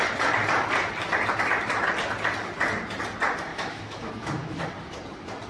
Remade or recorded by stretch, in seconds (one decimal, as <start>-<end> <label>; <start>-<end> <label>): 0.0-3.5 recorded; 3.5-4.6 remade; 4.6-5.5 recorded